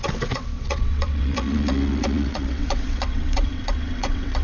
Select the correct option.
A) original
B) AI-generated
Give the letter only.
B